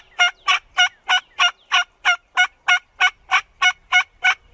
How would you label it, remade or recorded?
recorded